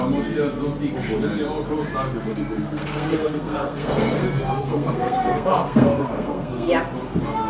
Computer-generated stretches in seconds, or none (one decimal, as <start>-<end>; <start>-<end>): 2.3-6.7